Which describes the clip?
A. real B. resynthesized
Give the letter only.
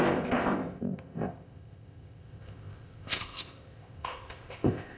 B